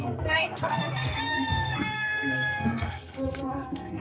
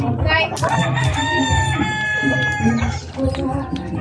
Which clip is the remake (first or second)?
first